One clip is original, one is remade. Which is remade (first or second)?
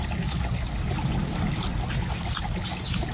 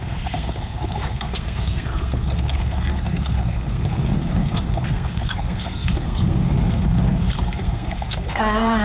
second